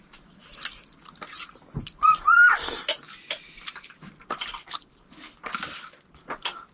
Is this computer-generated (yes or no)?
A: no